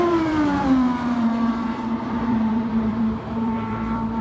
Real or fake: fake